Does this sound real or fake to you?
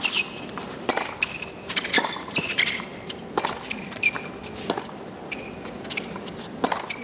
real